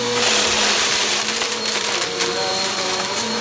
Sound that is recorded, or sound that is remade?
remade